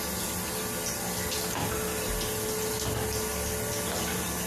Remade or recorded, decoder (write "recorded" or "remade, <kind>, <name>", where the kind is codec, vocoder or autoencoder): recorded